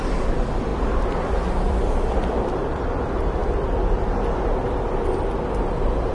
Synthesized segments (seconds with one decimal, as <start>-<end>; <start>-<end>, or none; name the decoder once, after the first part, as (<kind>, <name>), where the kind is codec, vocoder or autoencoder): 0.7-2.9 (vocoder, BigVGAN v2)